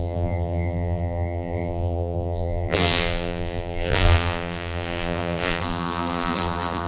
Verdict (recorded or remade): remade